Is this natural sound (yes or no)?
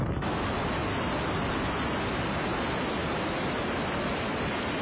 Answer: yes